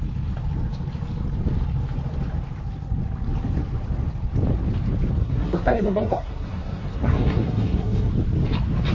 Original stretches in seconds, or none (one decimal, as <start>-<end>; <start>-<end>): 0.0-5.2; 8.1-8.9